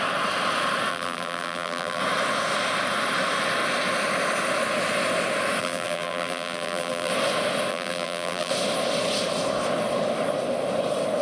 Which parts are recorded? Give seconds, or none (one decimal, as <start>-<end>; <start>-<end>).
0.0-0.9; 2.0-5.6; 7.1-7.7; 8.5-11.2